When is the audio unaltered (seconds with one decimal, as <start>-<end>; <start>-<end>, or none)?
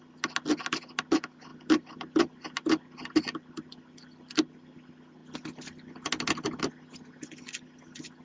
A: 0.0-8.2